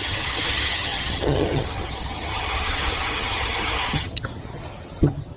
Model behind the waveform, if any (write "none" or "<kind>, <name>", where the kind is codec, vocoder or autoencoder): vocoder, HiFi-GAN